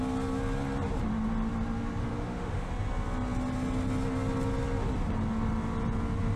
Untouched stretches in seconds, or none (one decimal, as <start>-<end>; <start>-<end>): 0.0-2.0; 2.7-6.4